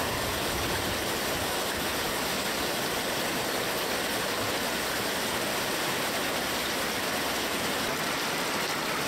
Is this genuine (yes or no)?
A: yes